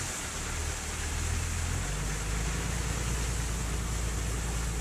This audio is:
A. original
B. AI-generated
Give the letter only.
A